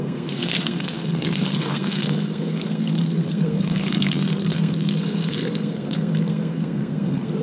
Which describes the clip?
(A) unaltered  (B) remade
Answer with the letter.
B